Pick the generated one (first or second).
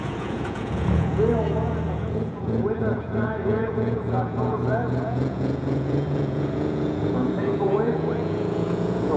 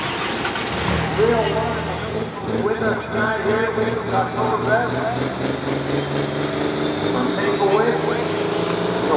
first